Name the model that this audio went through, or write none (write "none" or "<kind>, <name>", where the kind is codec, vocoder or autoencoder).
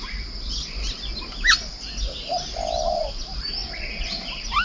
none